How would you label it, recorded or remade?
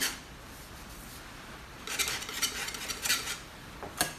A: recorded